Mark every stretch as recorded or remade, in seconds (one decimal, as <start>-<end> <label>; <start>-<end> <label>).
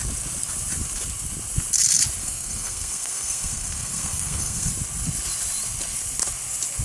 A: 0.0-2.2 recorded; 2.2-4.7 remade; 4.7-6.8 recorded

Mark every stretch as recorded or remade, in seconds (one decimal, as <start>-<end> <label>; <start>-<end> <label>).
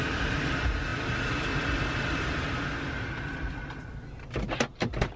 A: 0.0-5.2 recorded